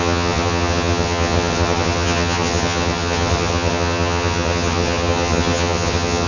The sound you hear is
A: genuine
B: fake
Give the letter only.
B